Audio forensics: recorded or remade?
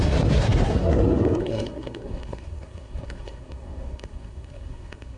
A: remade